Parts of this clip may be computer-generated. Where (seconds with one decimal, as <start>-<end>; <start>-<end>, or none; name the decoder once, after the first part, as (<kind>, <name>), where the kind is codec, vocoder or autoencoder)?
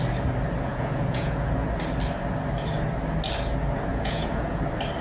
0.7-1.7 (vocoder, Vocos); 3.9-4.6